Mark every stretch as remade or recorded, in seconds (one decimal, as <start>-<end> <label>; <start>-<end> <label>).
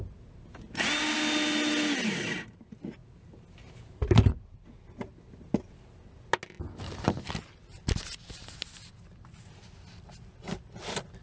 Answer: 0.0-11.2 recorded